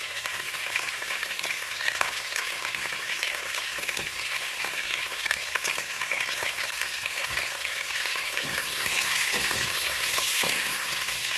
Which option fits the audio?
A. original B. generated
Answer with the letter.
B